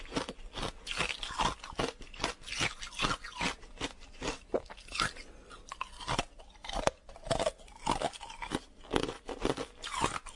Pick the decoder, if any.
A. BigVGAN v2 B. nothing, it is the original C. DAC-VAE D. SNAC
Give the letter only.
B